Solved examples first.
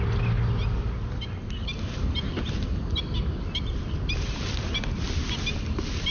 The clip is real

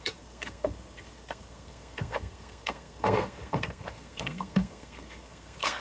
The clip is fake